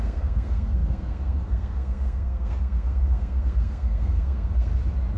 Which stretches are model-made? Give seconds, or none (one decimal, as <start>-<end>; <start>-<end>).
0.0-4.7